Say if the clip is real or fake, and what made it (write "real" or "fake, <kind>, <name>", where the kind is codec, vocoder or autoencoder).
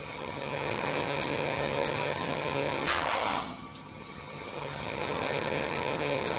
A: fake, vocoder, HiFi-GAN